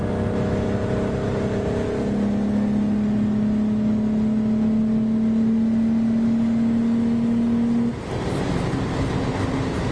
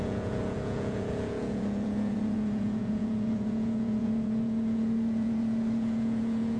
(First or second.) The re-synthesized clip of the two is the second